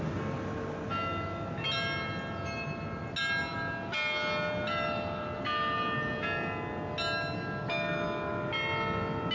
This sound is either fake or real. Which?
real